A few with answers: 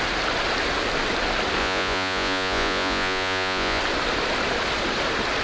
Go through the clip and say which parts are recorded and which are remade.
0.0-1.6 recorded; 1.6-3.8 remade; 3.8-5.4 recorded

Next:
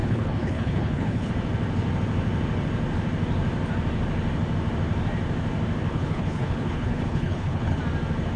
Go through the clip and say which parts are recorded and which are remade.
0.0-1.3 remade; 1.3-5.9 recorded; 5.9-7.8 remade; 7.8-8.4 recorded

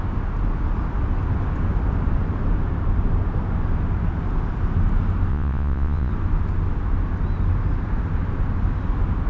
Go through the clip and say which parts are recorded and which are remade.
0.0-5.3 recorded; 5.3-6.1 remade; 6.1-9.3 recorded

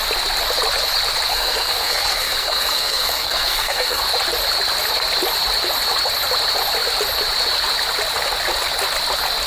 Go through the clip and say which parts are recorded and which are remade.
0.0-1.3 recorded; 1.3-4.0 remade; 4.0-9.5 recorded